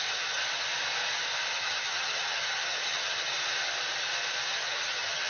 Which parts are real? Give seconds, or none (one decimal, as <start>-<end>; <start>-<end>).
0.4-1.5; 3.3-4.5